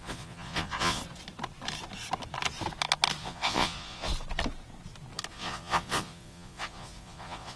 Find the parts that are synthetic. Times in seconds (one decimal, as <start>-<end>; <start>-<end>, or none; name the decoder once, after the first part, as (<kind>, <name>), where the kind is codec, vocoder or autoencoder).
0.0-1.0 (vocoder, Vocos); 3.2-4.1; 5.3-7.6